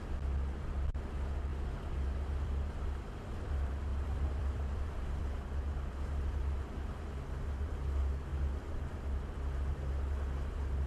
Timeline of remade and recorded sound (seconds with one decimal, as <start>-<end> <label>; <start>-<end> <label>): 0.0-1.5 recorded; 1.5-3.5 remade; 3.5-3.9 recorded; 3.9-5.5 remade; 5.5-8.3 recorded; 8.3-8.9 remade; 8.9-10.9 recorded